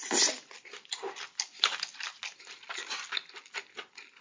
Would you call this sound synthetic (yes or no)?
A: no